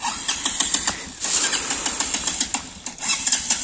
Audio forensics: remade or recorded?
recorded